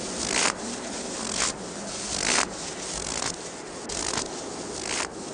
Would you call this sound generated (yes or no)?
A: no